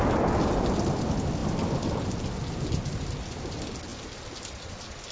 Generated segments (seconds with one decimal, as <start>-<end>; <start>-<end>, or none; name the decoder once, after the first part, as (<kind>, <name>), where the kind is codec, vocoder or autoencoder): none